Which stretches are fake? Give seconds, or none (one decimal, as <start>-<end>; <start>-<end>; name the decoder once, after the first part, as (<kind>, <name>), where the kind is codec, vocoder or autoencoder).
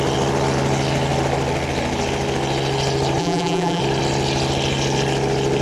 3.2-3.8 (vocoder, BigVGAN v2)